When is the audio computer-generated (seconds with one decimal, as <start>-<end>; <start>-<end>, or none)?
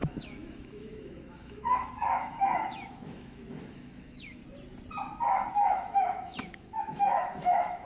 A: 0.0-4.4; 5.5-7.9